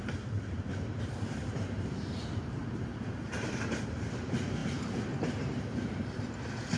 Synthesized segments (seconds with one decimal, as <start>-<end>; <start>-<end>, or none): 0.0-2.6; 3.3-6.8